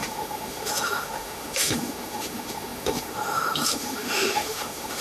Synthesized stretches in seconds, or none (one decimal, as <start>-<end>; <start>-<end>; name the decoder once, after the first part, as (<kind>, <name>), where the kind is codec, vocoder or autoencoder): 0.0-5.0 (autoencoder, DAC-VAE)